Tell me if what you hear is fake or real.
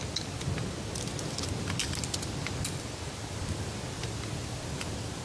real